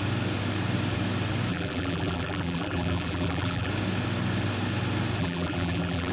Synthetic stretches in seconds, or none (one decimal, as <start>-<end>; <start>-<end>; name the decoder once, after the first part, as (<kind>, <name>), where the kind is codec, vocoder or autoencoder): 1.5-3.7 (vocoder, BigVGAN v2); 5.2-6.1